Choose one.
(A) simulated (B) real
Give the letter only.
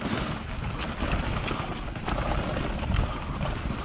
B